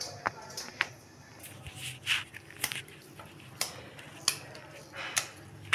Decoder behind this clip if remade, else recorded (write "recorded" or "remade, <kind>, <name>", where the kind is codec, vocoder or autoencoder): recorded